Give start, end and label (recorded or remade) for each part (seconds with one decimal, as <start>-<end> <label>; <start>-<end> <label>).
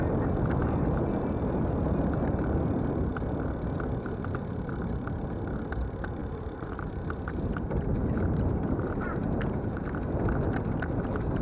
0.0-0.6 recorded; 0.6-1.6 remade; 1.6-6.2 recorded; 6.2-9.8 remade; 9.8-11.4 recorded